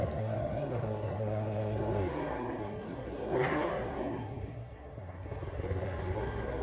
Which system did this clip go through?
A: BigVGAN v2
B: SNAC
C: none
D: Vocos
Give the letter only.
B